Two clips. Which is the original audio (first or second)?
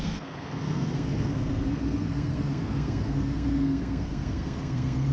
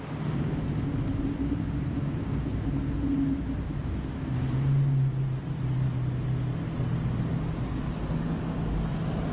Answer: second